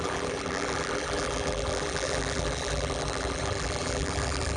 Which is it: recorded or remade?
remade